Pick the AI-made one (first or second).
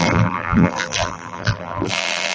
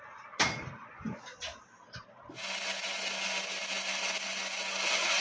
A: first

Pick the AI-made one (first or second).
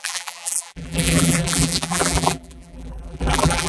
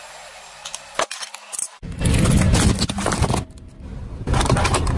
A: first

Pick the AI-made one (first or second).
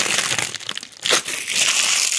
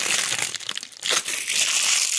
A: second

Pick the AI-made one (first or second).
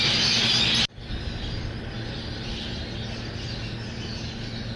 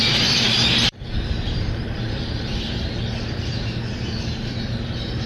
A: second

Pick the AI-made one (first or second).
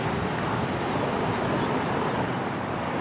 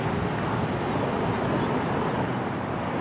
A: first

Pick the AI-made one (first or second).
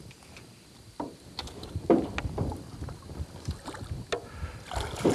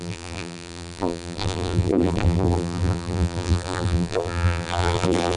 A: second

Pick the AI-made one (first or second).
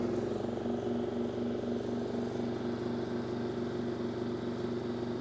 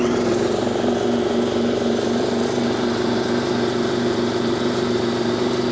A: second